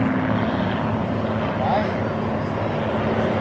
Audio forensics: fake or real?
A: real